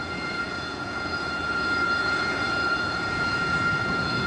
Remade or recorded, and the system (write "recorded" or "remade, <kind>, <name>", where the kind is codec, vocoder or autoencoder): remade, vocoder, Vocos